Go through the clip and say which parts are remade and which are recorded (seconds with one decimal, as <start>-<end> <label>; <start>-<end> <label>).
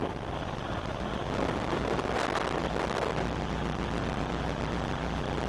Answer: 0.0-5.5 recorded